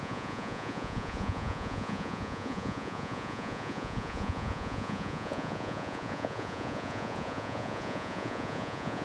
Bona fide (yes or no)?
no